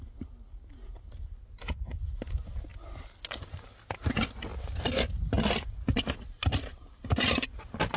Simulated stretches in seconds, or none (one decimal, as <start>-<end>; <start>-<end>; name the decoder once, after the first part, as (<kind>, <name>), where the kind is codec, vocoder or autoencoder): 4.5-5.1 (vocoder, BigVGAN v2)